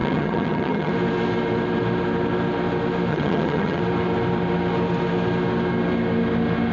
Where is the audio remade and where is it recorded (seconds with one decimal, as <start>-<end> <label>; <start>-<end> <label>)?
0.0-0.9 remade; 0.9-3.1 recorded; 3.1-3.8 remade; 3.8-6.7 recorded